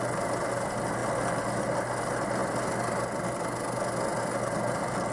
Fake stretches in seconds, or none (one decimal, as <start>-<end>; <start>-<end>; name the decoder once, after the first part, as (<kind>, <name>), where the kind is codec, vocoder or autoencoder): none